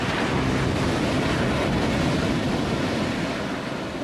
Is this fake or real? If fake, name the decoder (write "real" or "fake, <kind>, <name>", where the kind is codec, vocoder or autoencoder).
real